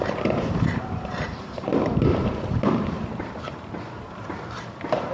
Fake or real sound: fake